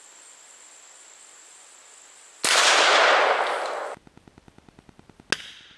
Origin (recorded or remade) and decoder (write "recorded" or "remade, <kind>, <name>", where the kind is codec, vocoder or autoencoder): recorded